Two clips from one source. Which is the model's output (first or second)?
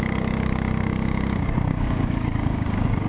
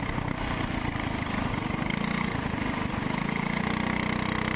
first